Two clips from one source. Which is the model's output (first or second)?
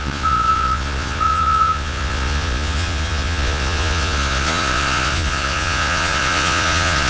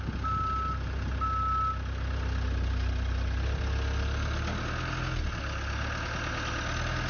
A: first